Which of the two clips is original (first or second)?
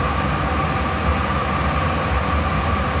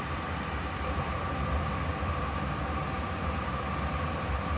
first